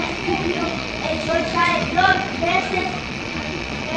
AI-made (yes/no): yes